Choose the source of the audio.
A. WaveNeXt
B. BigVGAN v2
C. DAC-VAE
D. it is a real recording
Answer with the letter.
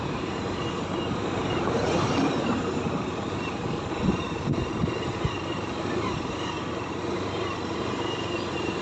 B